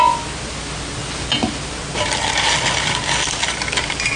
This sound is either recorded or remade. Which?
recorded